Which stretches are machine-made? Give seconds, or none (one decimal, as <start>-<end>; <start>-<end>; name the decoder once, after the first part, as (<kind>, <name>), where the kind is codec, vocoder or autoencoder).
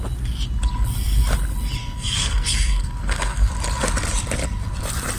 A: 1.8-3.5 (codec, SNAC)